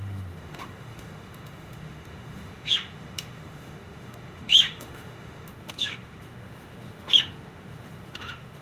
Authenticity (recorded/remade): remade